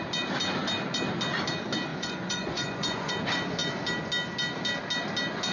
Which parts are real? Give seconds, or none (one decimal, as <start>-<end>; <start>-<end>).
0.0-1.9; 3.1-5.5